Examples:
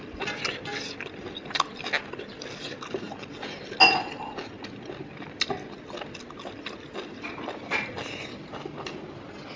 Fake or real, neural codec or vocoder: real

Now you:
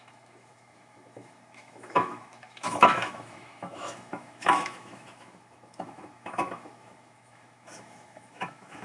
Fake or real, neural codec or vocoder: fake, autoencoder, DAC-VAE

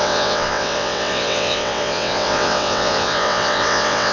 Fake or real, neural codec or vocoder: fake, vocoder, WaveNeXt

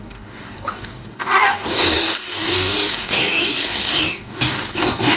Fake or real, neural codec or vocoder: fake, codec, DAC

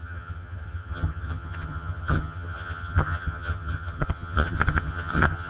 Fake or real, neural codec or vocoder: fake, vocoder, HiFi-GAN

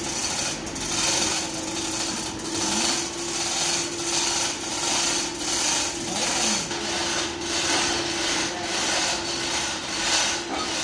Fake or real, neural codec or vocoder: real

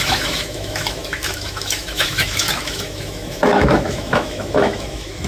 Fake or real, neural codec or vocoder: fake, autoencoder, DAC-VAE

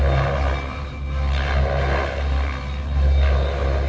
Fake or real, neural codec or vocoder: real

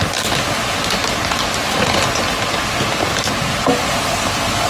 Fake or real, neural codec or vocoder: real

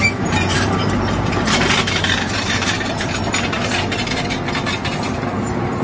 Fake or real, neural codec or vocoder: fake, vocoder, BigVGAN v2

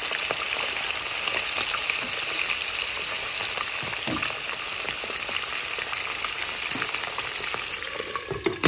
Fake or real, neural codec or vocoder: real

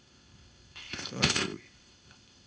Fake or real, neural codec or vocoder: fake, codec, ZipCodec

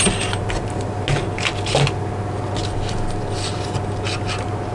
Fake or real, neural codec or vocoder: real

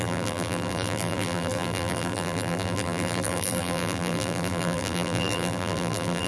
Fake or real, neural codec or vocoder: fake, vocoder, BigVGAN v2